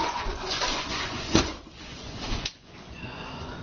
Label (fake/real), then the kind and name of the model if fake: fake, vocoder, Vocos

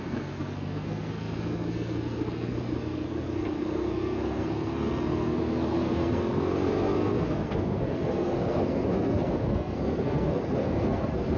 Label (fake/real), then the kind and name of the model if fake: fake, codec, SNAC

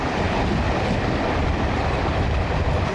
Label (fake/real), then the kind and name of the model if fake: real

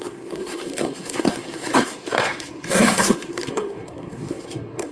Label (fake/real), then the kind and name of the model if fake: fake, codec, SNAC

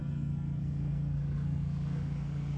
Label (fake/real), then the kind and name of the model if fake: fake, codec, SNAC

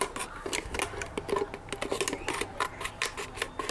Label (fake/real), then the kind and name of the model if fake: real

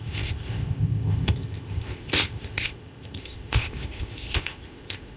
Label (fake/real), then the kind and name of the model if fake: fake, codec, ZipCodec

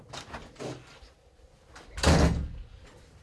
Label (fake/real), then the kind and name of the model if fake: real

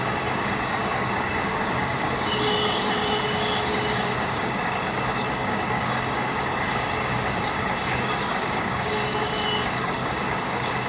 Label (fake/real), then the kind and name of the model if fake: fake, codec, DAC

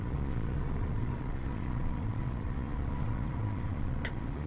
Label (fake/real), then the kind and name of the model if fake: fake, vocoder, Vocos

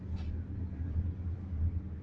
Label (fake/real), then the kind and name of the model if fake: real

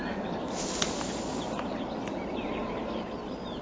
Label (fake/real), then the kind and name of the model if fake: real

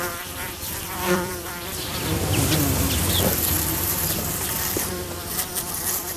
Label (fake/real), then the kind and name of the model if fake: fake, vocoder, BigVGAN v2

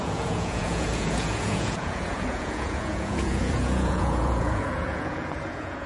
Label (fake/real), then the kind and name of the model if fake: fake, vocoder, Vocos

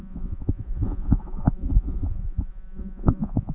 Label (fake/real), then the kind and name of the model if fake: fake, vocoder, Vocos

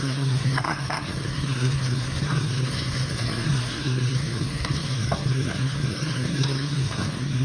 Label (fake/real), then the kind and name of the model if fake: fake, codec, SNAC